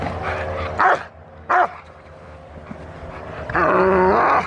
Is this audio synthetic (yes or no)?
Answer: no